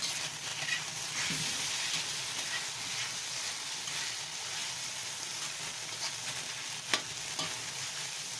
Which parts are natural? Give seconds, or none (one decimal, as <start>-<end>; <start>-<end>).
0.0-8.4